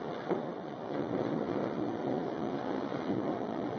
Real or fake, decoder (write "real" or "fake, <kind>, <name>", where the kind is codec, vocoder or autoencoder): fake, vocoder, Vocos